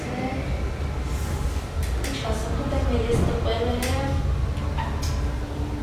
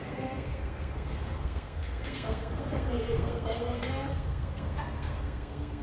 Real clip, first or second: first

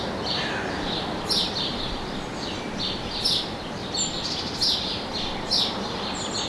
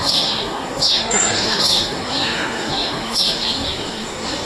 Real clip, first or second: first